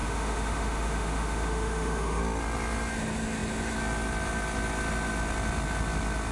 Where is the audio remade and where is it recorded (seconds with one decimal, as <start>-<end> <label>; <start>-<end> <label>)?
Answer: 0.0-2.2 remade; 2.2-6.3 recorded